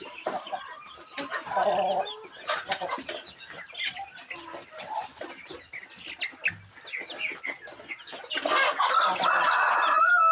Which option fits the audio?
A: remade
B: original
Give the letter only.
B